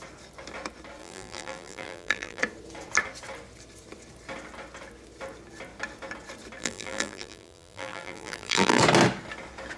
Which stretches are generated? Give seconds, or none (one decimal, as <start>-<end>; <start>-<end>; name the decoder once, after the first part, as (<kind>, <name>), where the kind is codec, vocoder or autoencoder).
1.0-2.4 (vocoder, BigVGAN v2); 6.6-8.8